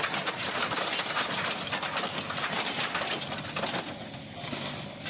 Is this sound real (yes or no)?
yes